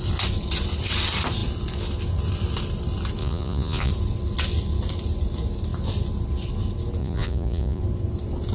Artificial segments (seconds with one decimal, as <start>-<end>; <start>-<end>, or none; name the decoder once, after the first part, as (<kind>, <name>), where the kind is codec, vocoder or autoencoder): 3.2-3.9 (vocoder, Vocos); 7.0-7.8